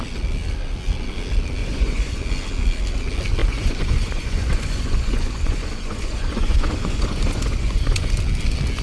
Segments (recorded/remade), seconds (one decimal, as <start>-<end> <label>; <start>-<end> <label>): 0.0-1.6 recorded; 1.6-2.2 remade; 2.2-3.4 recorded; 3.4-8.1 remade; 8.1-8.8 recorded